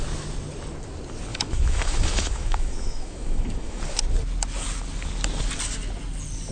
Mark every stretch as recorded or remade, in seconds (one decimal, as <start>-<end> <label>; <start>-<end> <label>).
0.0-1.3 recorded; 1.3-3.8 remade; 3.8-6.5 recorded